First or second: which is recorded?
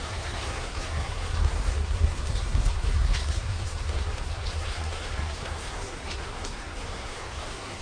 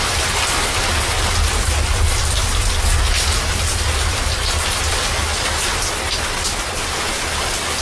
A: second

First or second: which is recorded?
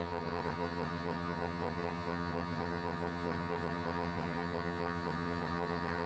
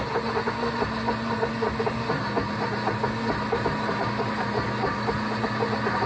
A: second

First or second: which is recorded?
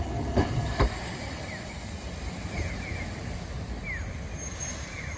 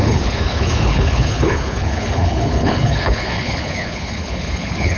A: first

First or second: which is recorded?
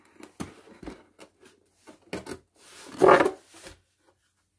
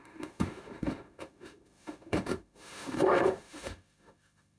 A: first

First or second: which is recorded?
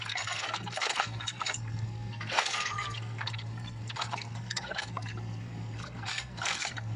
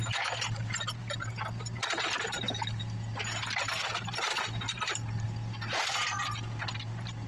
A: second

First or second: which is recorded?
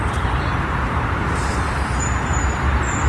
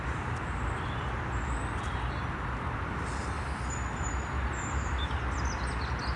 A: second